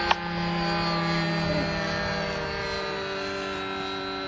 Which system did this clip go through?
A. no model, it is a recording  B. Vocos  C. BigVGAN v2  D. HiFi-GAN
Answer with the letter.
A